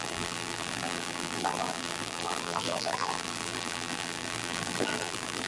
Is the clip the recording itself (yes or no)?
no